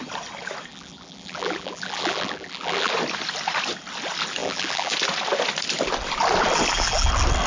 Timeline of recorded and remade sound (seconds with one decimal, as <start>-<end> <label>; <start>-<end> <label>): 0.0-0.7 recorded; 0.7-2.9 remade; 2.9-4.4 recorded; 4.4-4.9 remade; 4.9-7.5 recorded

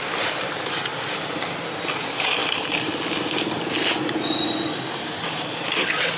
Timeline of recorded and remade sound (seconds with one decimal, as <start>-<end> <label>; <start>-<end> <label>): 0.0-0.9 recorded; 0.9-1.5 remade; 1.5-2.4 recorded; 2.4-3.2 remade; 3.2-6.2 recorded

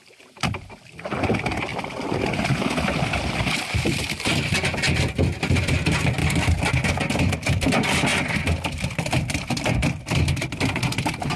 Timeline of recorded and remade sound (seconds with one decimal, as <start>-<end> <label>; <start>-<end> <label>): 0.0-11.4 recorded

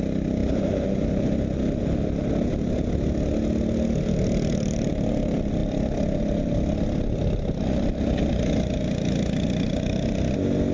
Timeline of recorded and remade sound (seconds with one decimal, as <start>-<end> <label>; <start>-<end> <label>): 0.0-10.7 recorded

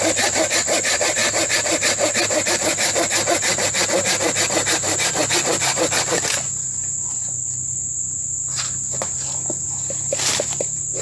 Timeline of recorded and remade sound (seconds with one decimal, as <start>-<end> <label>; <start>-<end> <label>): 0.0-11.0 recorded

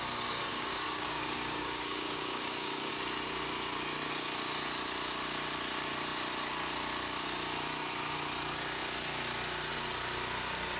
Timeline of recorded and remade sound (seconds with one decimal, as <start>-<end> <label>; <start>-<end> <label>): 0.0-0.5 recorded; 0.5-2.9 remade; 2.9-10.8 recorded

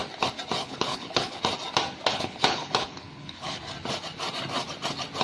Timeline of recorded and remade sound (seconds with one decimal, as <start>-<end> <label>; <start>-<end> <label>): 0.0-0.6 recorded; 0.6-1.4 remade; 1.4-2.1 recorded; 2.1-3.6 remade; 3.6-5.2 recorded

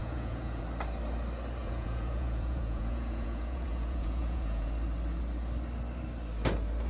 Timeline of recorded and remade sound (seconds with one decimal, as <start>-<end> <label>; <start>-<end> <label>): 0.0-0.6 remade; 0.6-1.6 recorded; 1.6-4.7 remade; 4.7-6.9 recorded